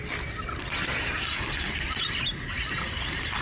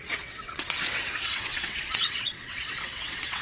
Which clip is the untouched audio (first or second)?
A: first